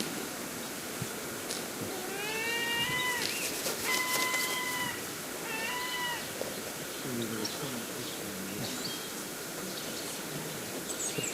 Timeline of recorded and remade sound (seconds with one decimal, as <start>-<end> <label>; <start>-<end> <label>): 0.0-11.3 recorded